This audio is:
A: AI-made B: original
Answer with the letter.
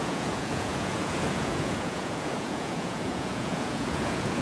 A